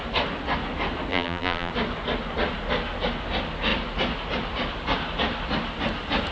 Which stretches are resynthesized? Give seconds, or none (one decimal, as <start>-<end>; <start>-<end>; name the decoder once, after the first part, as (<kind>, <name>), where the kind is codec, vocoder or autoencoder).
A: 1.1-1.7 (vocoder, BigVGAN v2)